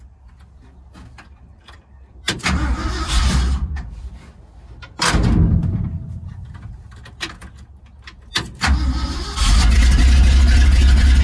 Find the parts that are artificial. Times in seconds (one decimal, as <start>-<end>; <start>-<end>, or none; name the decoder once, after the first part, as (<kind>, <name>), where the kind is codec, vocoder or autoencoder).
1.5-4.0 (vocoder, BigVGAN v2)